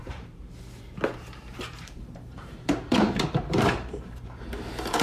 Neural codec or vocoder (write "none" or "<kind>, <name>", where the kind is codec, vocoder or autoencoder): vocoder, BigVGAN v2